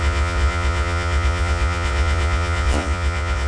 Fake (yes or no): yes